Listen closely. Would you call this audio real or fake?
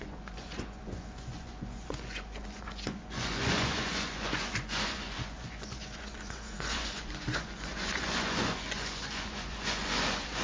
fake